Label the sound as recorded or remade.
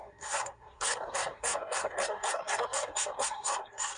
remade